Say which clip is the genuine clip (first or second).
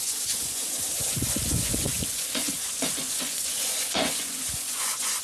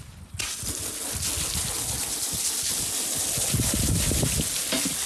second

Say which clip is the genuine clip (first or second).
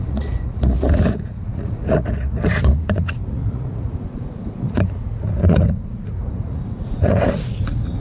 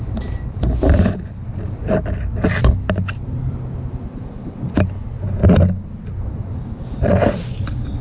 second